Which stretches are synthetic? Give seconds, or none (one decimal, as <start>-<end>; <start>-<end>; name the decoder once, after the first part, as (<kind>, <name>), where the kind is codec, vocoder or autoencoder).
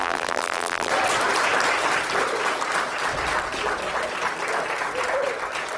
0.0-0.9 (vocoder, BigVGAN v2)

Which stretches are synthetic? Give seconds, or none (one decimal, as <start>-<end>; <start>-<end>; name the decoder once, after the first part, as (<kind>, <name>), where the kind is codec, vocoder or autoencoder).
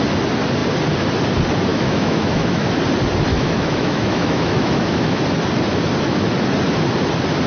1.7-2.7 (autoencoder, DAC-VAE); 3.3-5.2